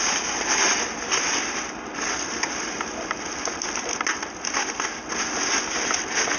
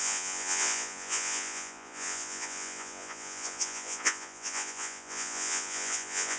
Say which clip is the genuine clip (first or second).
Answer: first